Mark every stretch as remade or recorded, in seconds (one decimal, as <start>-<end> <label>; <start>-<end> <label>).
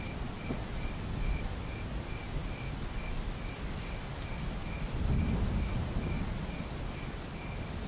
0.0-7.9 recorded